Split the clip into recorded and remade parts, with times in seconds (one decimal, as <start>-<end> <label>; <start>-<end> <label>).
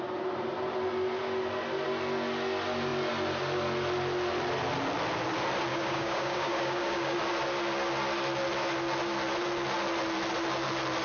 0.0-5.7 recorded; 5.7-7.2 remade; 7.2-11.0 recorded